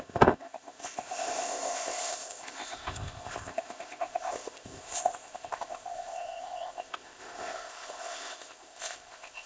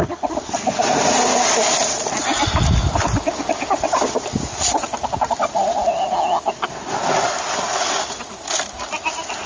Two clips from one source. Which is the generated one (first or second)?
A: first